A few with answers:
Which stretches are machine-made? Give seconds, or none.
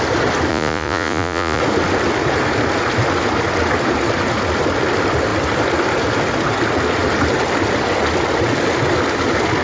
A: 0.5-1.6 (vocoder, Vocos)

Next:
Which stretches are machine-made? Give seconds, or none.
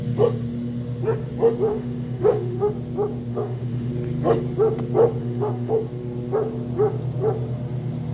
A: 1.7-2.7 (autoencoder, DAC-VAE); 3.3-3.9; 5.2-5.7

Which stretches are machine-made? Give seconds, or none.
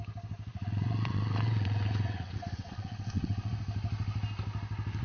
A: 0.5-3.5 (vocoder, WaveNeXt)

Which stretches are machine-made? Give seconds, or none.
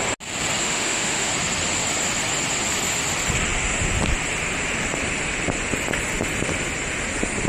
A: 0.6-1.3 (autoencoder, DAC-VAE)